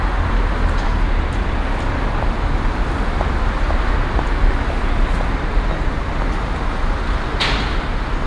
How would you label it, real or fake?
real